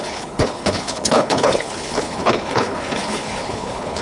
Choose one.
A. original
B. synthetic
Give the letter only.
B